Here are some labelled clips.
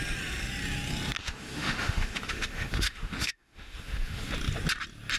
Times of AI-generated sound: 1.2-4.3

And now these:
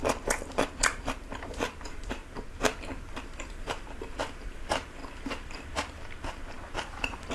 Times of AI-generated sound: 0.0-2.2; 3.1-7.3

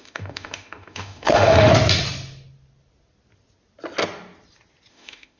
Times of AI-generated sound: 0.0-1.7; 4.9-5.4

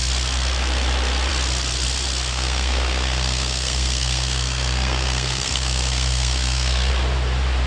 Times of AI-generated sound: 2.3-6.9

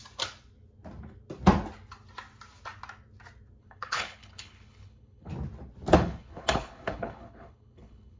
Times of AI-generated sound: 3.6-5.3; 5.9-8.2

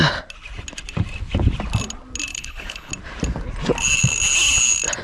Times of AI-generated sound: 2.3-2.9

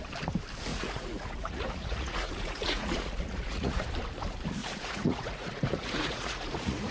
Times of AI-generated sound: 0.7-3.9; 4.6-6.9

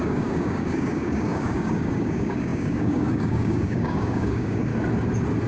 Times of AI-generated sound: 0.0-4.7